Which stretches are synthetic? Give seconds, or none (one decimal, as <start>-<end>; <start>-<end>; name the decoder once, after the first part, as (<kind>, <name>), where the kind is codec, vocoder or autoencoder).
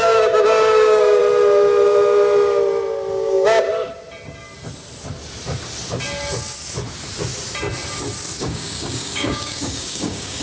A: 0.0-1.2 (codec, DAC); 3.1-3.7; 8.4-10.4